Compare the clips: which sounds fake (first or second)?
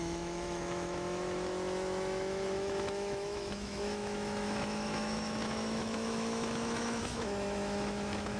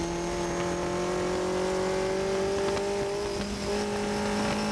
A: first